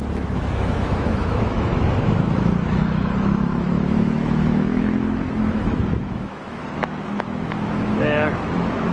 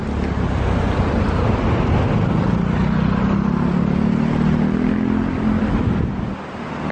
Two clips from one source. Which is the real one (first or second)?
second